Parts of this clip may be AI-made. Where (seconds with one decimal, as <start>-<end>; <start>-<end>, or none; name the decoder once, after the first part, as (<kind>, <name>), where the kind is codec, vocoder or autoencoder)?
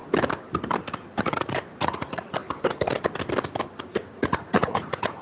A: 1.2-2.4 (vocoder, Vocos); 4.1-5.2